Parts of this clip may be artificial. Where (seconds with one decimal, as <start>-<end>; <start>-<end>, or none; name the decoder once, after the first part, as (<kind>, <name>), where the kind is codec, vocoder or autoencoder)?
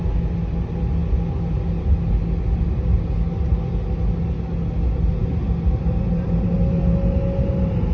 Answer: none